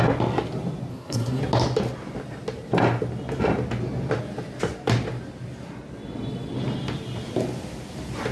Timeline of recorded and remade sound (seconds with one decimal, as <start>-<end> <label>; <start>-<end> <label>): 0.0-0.9 recorded; 0.9-1.4 remade; 1.4-8.3 recorded